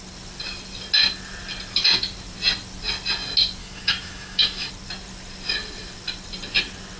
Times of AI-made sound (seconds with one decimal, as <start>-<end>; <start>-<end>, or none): 3.6-4.7